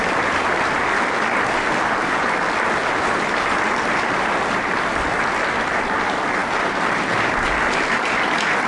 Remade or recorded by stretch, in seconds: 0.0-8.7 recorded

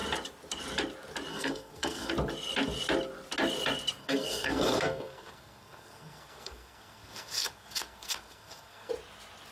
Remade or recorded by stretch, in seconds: 0.0-1.3 recorded; 1.3-2.1 remade; 2.1-4.0 recorded; 4.0-8.9 remade; 8.9-9.5 recorded

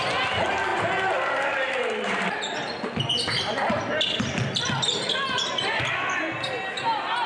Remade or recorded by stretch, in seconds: 0.0-7.3 recorded

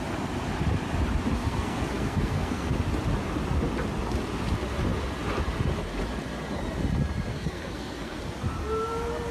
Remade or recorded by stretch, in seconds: 0.0-1.4 recorded; 1.4-2.7 remade; 2.7-7.3 recorded; 7.3-8.2 remade; 8.2-9.3 recorded